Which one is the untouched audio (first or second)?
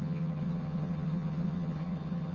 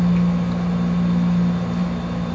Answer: second